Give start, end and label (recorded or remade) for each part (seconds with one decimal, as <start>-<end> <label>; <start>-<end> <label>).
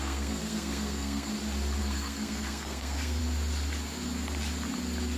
0.0-1.3 remade; 1.3-1.8 recorded; 1.8-3.2 remade; 3.2-5.2 recorded